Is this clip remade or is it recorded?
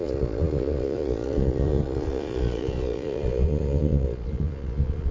remade